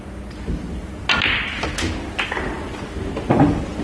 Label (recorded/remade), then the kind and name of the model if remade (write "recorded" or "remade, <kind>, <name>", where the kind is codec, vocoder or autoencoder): recorded